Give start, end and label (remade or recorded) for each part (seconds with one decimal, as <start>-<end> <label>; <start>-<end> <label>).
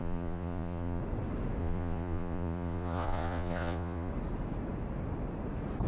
0.0-1.0 remade; 1.0-1.6 recorded; 1.6-4.1 remade; 4.1-5.9 recorded